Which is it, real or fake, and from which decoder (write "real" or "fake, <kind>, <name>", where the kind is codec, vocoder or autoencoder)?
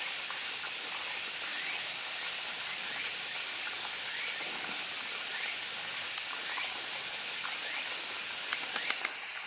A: real